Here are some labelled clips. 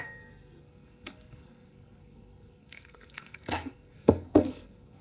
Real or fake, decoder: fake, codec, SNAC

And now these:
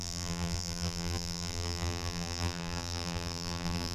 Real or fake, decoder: fake, vocoder, BigVGAN v2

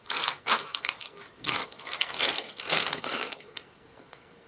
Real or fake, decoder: fake, codec, SNAC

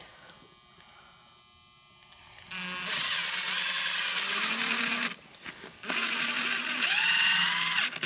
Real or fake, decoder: real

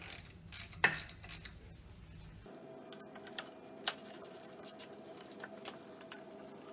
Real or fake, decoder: real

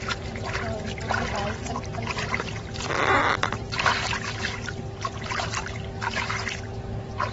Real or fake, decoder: real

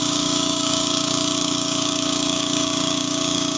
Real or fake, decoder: fake, codec, DAC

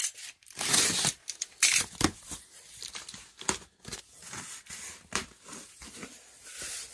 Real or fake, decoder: real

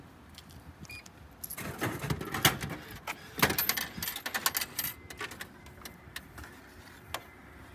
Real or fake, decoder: real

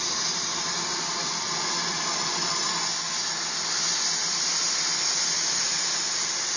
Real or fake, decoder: real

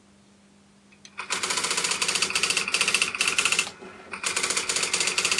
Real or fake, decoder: real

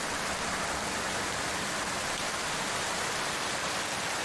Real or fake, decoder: real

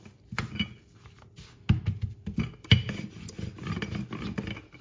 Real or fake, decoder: real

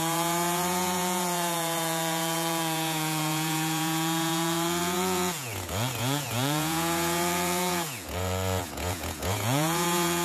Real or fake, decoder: fake, vocoder, Vocos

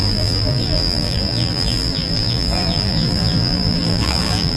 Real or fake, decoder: fake, vocoder, BigVGAN v2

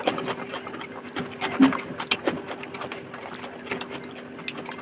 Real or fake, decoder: real